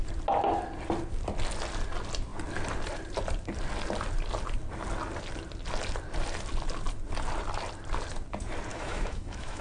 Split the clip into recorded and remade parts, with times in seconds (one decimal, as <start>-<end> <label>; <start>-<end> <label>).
0.0-8.7 recorded; 8.7-9.6 remade